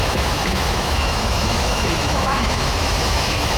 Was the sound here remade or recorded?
remade